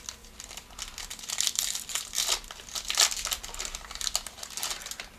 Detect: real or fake real